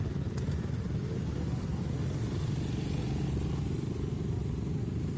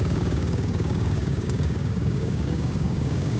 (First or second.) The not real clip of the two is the second